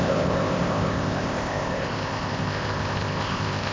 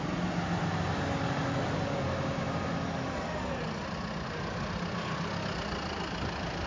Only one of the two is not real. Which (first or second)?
first